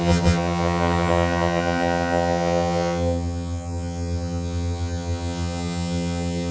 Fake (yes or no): yes